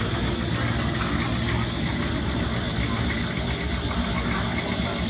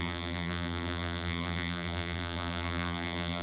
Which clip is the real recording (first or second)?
first